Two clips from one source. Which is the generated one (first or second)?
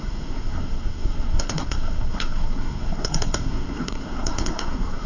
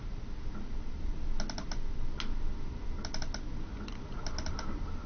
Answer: first